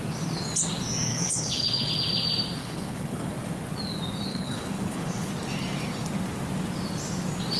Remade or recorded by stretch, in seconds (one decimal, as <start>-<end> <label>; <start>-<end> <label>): 0.0-1.1 recorded; 1.1-1.9 remade; 1.9-2.6 recorded; 2.6-3.3 remade; 3.3-4.3 recorded; 4.3-5.3 remade; 5.3-7.6 recorded